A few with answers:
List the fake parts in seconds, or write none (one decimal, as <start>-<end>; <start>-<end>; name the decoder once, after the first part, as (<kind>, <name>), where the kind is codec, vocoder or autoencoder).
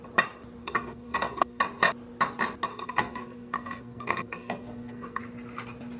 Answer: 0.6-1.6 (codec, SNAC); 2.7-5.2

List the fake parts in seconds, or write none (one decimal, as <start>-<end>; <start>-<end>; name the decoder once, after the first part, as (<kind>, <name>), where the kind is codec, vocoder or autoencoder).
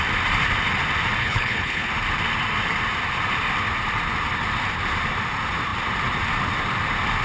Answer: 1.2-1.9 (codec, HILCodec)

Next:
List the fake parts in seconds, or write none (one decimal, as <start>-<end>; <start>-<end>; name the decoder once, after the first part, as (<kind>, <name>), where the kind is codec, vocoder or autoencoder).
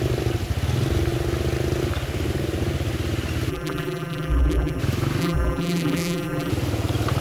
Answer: 3.5-4.8 (vocoder, BigVGAN v2); 5.2-6.5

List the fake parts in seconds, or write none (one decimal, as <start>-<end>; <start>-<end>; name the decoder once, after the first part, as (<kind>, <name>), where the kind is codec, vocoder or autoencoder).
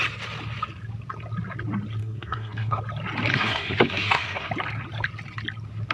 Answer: 2.0-2.8 (codec, SNAC); 3.3-4.5